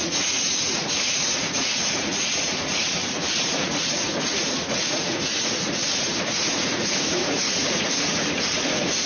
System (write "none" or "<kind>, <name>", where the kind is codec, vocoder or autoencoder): vocoder, Vocos